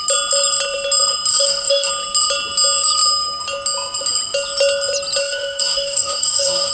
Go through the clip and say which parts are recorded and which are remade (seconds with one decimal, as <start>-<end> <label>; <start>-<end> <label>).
0.0-1.3 recorded; 1.3-1.9 remade; 1.9-5.2 recorded; 5.2-6.7 remade